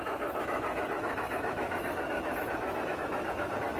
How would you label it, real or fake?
fake